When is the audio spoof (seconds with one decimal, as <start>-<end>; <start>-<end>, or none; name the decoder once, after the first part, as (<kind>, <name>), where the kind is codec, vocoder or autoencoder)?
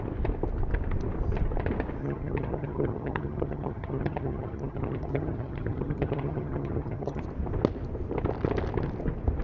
2.0-7.2 (vocoder, HiFi-GAN)